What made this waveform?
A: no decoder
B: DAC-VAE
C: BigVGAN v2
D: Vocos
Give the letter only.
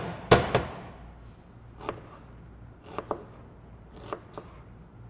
A